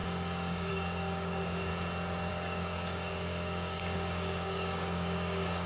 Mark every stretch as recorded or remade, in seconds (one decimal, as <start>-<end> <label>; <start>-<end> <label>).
0.0-1.7 remade; 1.7-2.3 recorded; 2.3-5.7 remade